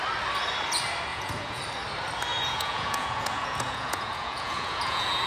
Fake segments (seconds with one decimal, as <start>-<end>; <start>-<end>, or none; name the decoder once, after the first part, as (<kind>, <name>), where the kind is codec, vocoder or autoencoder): 1.1-1.6 (vocoder, Vocos); 2.3-5.3